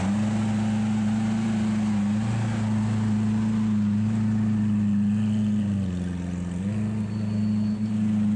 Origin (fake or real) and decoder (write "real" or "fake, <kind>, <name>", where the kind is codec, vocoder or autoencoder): real